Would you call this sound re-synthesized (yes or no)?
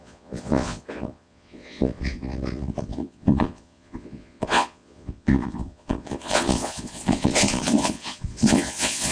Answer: yes